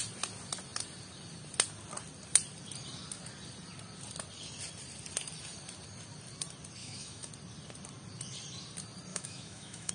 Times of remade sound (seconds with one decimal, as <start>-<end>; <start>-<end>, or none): 6.8-7.3; 9.1-9.9